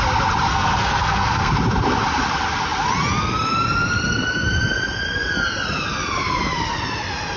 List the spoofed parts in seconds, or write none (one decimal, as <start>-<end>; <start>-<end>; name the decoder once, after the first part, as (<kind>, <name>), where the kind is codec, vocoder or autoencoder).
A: 0.5-1.5 (codec, SNAC)